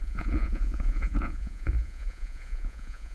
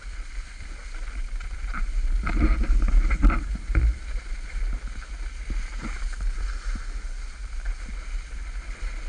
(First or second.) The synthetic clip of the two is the first